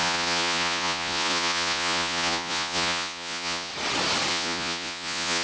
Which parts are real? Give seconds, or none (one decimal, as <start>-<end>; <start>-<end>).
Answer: 3.7-4.3